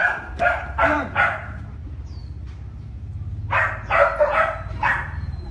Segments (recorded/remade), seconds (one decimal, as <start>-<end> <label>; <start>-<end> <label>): 0.0-2.2 remade; 2.2-4.7 recorded; 4.7-5.5 remade